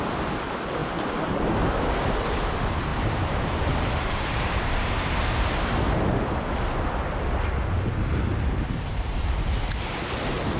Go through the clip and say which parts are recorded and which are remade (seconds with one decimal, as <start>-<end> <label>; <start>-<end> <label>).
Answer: 0.0-2.9 recorded; 2.9-6.4 remade; 6.4-8.3 recorded; 8.3-9.4 remade; 9.4-10.6 recorded